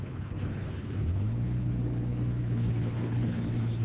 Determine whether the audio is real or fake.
fake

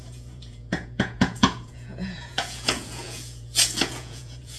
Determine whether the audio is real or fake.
fake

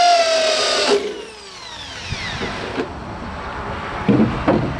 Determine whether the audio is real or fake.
real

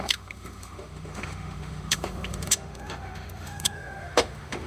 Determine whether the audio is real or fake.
fake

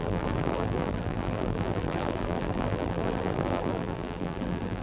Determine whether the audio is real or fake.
fake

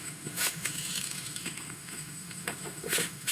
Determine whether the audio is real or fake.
fake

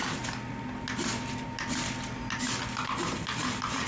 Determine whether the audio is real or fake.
real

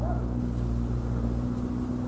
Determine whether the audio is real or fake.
real